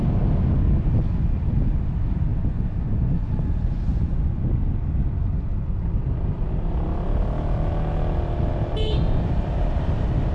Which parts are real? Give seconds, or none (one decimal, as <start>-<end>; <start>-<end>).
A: 0.0-2.3; 4.4-10.3